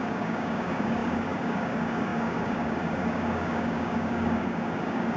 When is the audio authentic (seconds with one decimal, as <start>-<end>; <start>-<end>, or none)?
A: none